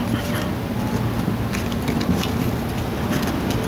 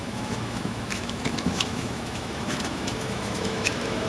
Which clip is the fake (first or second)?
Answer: second